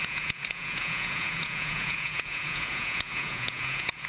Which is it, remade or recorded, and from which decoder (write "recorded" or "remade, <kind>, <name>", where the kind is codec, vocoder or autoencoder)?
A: remade, vocoder, Vocos